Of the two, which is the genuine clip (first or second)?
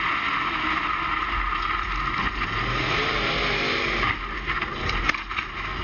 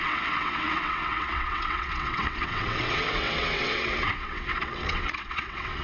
first